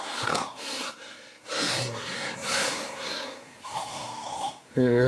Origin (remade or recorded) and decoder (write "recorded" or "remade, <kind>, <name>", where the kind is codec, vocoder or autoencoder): remade, codec, SNAC